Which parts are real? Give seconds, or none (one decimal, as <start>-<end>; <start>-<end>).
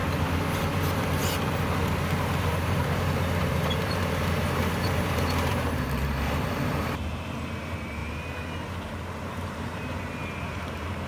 0.0-0.6; 1.2-1.9; 8.0-9.3